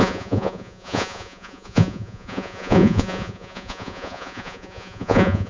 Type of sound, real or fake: fake